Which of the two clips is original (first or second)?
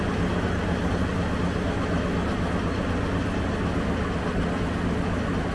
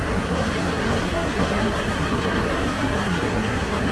first